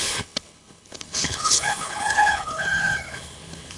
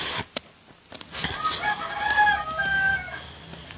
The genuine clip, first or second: second